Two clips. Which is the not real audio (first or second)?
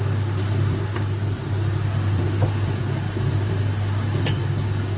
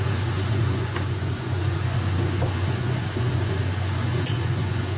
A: second